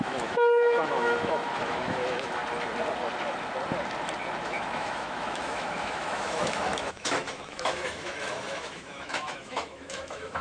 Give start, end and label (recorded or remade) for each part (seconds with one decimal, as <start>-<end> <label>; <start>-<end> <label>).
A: 0.0-2.4 remade; 2.4-4.4 recorded; 4.4-10.4 remade